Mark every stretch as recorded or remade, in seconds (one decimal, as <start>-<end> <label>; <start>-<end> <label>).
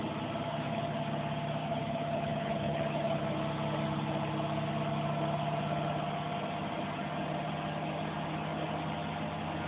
0.0-0.5 recorded; 0.5-1.0 remade; 1.0-1.6 recorded; 1.6-3.2 remade; 3.2-9.7 recorded